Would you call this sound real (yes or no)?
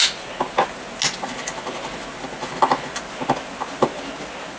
yes